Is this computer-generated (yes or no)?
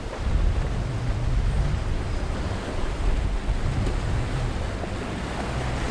no